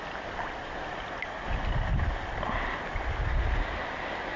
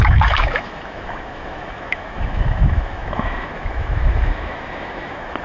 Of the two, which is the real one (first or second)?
first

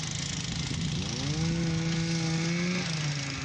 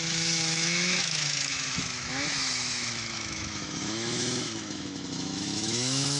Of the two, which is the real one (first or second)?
first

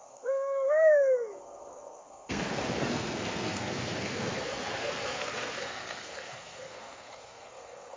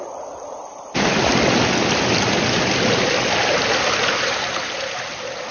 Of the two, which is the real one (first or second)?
second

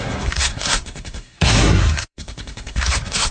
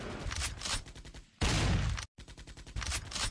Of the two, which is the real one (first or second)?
second